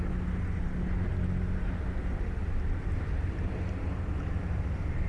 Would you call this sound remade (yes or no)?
no